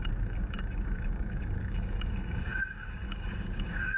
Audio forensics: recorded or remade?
remade